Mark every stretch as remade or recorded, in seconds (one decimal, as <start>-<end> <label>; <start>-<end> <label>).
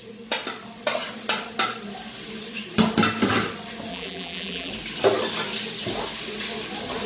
0.0-3.9 recorded; 3.9-4.7 remade; 4.7-7.1 recorded